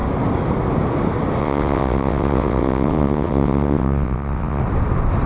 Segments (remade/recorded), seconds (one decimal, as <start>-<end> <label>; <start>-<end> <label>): 0.0-1.4 recorded; 1.4-4.6 remade; 4.6-5.3 recorded